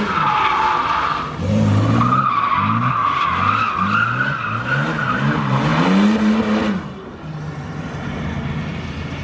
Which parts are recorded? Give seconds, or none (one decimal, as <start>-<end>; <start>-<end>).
0.0-9.2